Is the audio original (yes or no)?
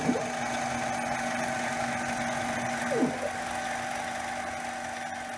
yes